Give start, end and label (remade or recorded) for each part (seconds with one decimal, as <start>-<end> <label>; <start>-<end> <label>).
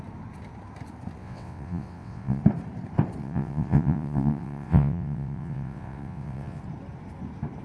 0.0-1.2 recorded; 1.2-2.4 remade; 2.4-3.2 recorded; 3.2-6.6 remade; 6.6-7.6 recorded